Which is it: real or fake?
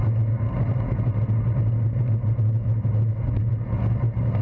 real